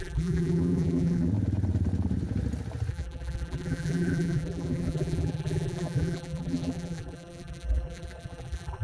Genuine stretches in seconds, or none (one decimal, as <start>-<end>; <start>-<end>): 1.3-2.9